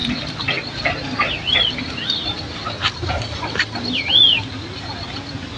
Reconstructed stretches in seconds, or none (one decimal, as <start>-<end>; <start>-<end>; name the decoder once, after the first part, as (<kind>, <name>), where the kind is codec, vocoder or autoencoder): 0.0-1.7 (vocoder, BigVGAN v2); 2.8-4.1